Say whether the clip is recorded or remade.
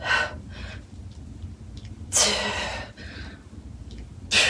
recorded